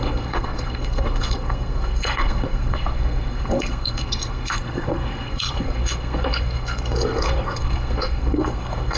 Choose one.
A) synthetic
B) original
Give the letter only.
A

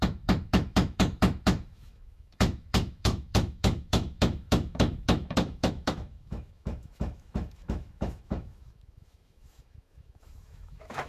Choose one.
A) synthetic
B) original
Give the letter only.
A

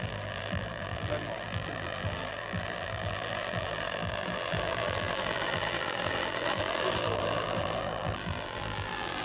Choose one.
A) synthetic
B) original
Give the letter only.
A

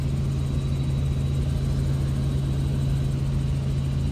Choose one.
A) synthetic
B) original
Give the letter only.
B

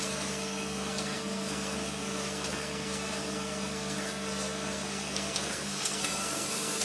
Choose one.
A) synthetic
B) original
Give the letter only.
A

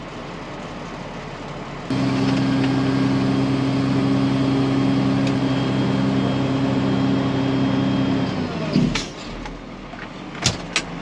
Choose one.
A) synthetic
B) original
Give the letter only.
B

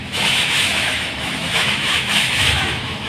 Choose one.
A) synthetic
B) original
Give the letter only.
A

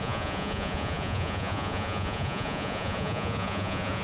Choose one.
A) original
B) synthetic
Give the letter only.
B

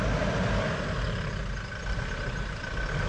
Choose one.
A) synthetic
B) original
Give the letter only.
B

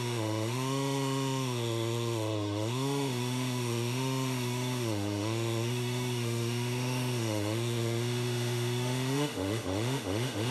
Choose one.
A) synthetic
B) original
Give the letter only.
A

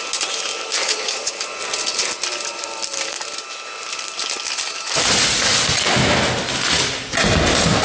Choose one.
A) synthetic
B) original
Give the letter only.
B